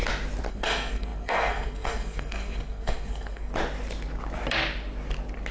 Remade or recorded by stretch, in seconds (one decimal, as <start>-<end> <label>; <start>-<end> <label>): 0.0-0.5 recorded; 0.5-3.5 remade; 3.5-5.5 recorded